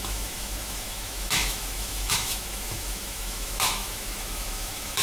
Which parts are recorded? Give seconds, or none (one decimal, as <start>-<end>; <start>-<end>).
none